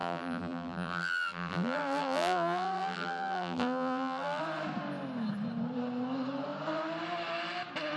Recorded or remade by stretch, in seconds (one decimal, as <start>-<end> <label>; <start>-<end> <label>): 0.0-4.4 remade; 4.4-8.0 recorded